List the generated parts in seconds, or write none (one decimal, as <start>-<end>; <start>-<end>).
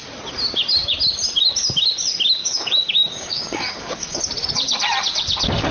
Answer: 2.4-4.2